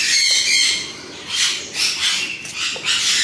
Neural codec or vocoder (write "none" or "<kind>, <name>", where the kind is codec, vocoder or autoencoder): none